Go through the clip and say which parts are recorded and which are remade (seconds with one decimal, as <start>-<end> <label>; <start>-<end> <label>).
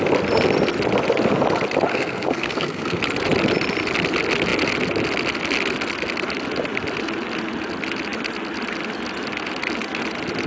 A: 0.0-1.9 recorded; 1.9-3.0 remade; 3.0-10.5 recorded